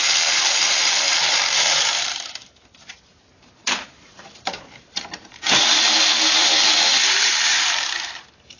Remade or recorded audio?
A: remade